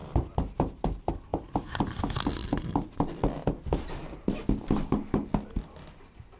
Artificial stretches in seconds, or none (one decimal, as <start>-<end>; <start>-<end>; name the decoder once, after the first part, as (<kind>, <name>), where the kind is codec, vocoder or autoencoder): 0.0-0.6 (vocoder, BigVGAN v2)